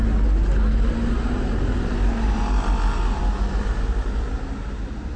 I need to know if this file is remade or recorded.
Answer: recorded